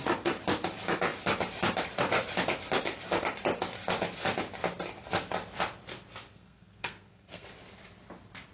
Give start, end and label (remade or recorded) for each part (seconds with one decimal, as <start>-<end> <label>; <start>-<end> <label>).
0.0-6.3 recorded; 6.3-7.5 remade; 7.5-8.5 recorded